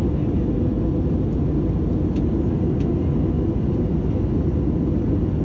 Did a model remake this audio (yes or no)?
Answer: no